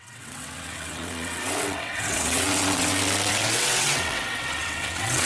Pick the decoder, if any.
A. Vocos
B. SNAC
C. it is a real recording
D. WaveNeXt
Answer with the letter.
D